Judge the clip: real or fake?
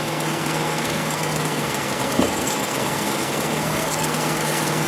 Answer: fake